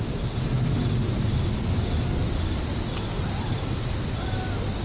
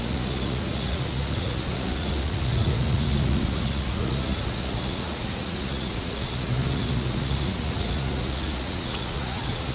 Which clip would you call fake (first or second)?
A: second